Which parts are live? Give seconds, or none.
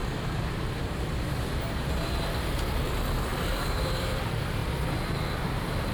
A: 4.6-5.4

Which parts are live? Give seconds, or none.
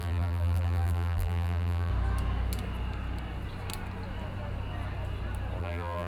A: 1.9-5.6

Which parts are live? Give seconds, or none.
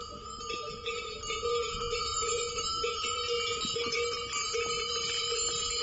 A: 0.0-5.8